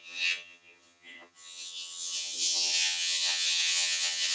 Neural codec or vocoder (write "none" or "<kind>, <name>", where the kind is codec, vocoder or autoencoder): vocoder, HiFi-GAN